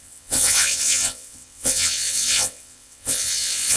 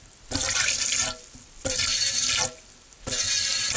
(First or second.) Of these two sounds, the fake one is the first